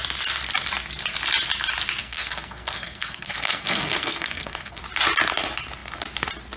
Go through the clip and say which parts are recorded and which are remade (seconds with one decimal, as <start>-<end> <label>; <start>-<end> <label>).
0.0-2.0 recorded; 2.0-4.8 remade; 4.8-6.6 recorded